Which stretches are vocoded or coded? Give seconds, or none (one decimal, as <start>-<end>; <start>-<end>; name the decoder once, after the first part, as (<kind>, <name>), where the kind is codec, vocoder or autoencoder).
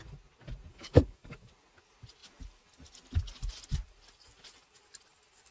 0.7-1.5 (codec, DAC)